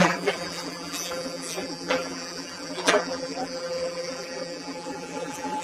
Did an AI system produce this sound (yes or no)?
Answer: yes